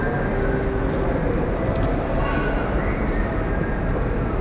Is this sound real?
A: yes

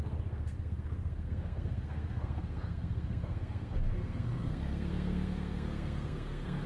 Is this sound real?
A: no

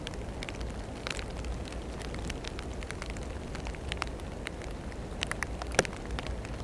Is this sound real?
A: yes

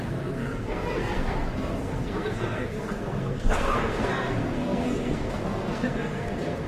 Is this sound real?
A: no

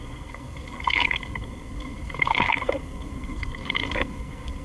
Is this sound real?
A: no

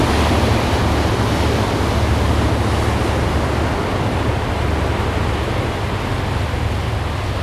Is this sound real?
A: yes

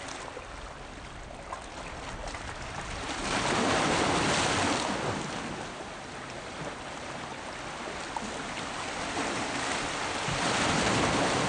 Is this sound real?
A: yes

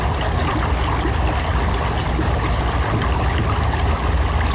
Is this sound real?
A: yes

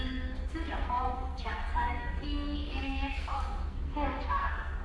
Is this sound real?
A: no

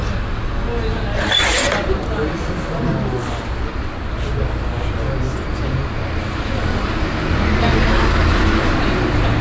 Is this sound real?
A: yes